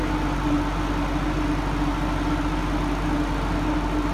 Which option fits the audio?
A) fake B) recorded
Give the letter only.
B